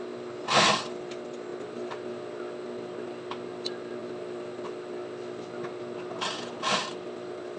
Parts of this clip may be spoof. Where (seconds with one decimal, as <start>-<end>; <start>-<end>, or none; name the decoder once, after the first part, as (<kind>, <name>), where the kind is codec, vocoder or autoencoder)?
none